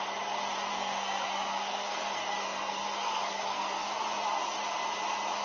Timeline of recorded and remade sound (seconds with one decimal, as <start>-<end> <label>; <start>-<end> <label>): 0.0-0.7 recorded; 0.7-3.9 remade; 3.9-5.4 recorded